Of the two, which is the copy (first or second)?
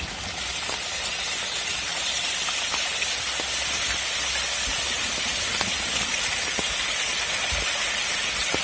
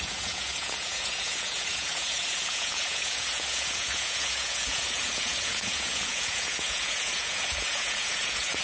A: second